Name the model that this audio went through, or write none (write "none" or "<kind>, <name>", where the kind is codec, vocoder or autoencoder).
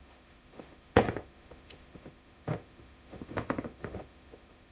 autoencoder, DAC-VAE